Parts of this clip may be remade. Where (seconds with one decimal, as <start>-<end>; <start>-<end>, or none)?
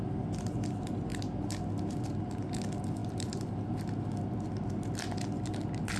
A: 3.0-4.0